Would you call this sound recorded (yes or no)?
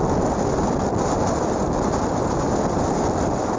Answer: yes